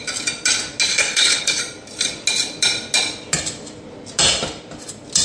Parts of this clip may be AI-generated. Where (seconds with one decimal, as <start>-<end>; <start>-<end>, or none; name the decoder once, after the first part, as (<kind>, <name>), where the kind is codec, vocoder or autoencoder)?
0.9-1.6 (codec, HILCodec)